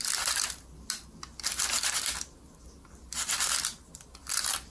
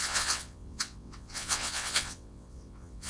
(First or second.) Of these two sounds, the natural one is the first